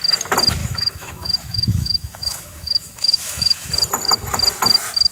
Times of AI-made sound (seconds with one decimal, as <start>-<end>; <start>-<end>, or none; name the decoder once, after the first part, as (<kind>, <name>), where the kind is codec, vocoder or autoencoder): 0.6-3.7 (autoencoder, DAC-VAE)